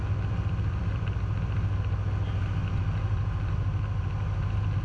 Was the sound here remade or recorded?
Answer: recorded